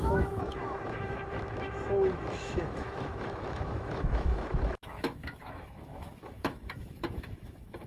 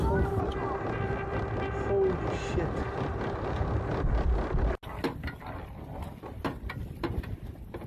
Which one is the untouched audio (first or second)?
second